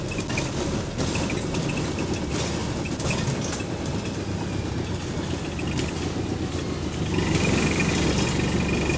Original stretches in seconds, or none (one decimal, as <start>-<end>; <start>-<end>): 0.0-9.0